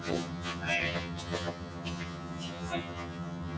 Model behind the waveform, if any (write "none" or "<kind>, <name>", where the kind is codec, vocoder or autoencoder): vocoder, HiFi-GAN